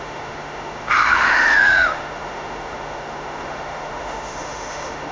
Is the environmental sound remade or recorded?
remade